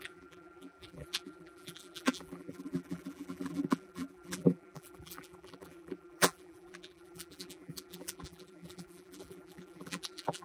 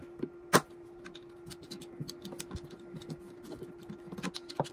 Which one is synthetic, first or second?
first